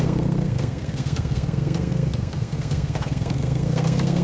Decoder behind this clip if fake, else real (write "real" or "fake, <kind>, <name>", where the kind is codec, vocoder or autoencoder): fake, codec, SNAC